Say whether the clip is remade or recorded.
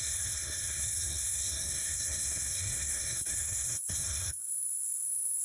remade